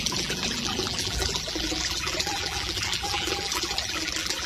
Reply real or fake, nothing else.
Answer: fake